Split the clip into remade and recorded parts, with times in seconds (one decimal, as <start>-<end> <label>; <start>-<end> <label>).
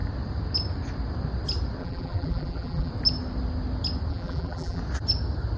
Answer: 0.0-1.8 recorded; 1.8-2.9 remade; 2.9-4.1 recorded; 4.1-4.8 remade; 4.8-5.6 recorded